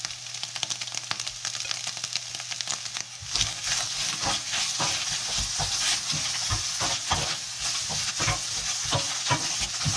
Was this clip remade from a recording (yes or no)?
no